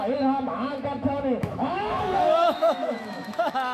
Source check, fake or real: fake